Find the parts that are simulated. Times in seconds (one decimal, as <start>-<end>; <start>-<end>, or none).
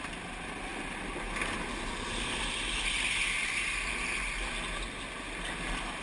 none